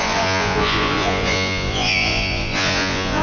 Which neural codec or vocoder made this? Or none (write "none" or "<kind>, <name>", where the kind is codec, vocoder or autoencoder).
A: vocoder, Vocos